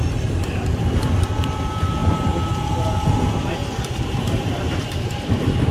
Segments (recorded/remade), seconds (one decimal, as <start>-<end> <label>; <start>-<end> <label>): 0.0-5.7 recorded